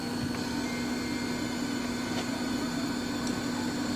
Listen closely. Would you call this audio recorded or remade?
recorded